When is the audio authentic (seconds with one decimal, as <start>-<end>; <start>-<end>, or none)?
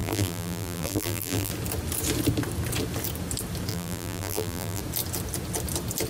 1.5-3.7; 4.8-6.1